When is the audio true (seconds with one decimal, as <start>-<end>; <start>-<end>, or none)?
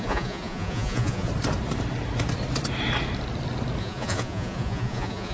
1.3-3.8